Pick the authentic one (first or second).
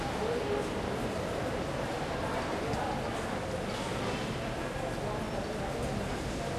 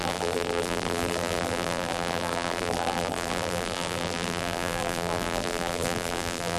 first